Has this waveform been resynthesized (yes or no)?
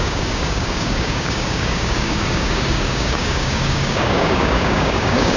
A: yes